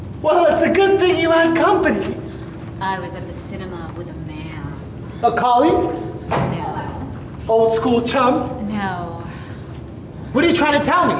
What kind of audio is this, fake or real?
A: real